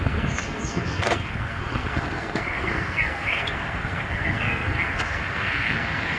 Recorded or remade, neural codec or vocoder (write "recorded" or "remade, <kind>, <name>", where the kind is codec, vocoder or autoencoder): remade, codec, SNAC